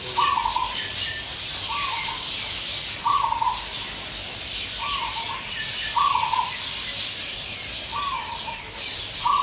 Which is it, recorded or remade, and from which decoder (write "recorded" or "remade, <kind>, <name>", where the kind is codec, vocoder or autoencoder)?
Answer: recorded